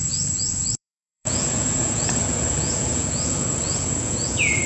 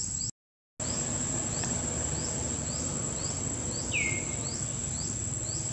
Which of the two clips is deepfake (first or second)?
first